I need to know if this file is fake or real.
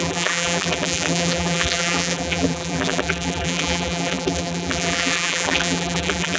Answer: fake